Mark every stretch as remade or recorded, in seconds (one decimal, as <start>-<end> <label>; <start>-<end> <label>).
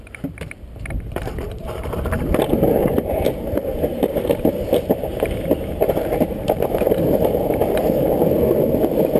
0.0-5.1 remade; 5.1-5.7 recorded; 5.7-7.6 remade; 7.6-9.2 recorded